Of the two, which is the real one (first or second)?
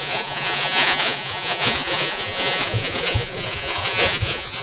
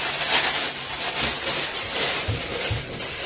second